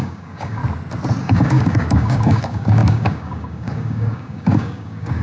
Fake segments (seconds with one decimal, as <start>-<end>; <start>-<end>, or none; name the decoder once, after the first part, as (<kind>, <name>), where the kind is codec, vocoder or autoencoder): 0.0-0.6 (codec, DAC); 1.2-5.2